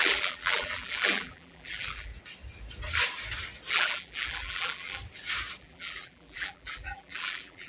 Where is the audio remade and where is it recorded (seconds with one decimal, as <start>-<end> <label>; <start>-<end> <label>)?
0.0-2.1 remade; 2.1-3.7 recorded; 3.7-5.0 remade; 5.0-5.6 recorded; 5.6-7.7 remade